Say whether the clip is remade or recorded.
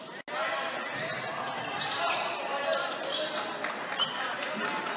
recorded